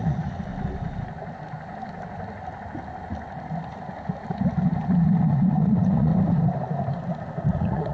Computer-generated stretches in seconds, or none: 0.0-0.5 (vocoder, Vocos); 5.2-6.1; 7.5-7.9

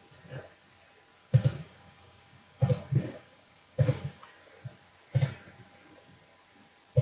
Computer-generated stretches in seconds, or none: 1.2-4.2 (codec, DAC)

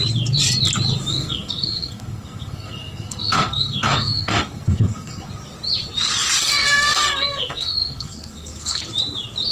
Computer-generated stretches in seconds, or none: 1.1-5.3 (codec, SNAC); 6.4-8.8

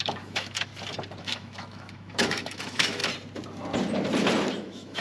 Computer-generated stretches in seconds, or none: 0.0-0.7 (autoencoder, DAC-VAE); 1.2-3.0; 4.5-5.0

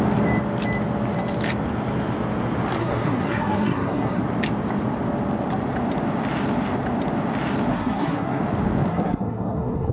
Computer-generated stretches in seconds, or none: 2.8-4.2 (codec, SNAC); 7.7-8.4; 8.9-9.9